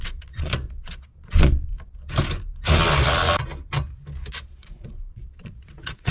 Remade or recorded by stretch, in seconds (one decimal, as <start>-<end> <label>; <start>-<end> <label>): 0.0-1.7 remade; 1.7-4.3 recorded; 4.3-6.1 remade